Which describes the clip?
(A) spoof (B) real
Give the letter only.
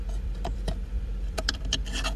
A